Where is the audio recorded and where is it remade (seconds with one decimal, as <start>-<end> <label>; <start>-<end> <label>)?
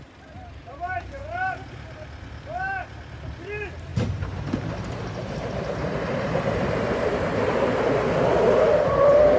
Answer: 0.0-3.9 recorded; 3.9-7.9 remade; 7.9-9.4 recorded